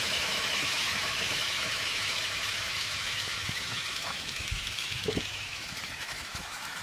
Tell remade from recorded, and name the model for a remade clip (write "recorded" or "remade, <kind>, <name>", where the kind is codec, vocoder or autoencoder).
remade, autoencoder, DAC-VAE